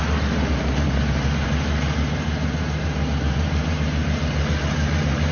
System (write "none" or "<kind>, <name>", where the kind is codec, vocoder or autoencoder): vocoder, BigVGAN v2